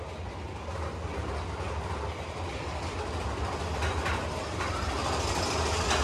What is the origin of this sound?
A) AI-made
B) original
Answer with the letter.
B